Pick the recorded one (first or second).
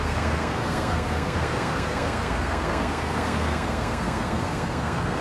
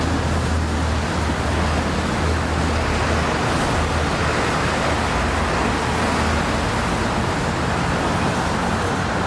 second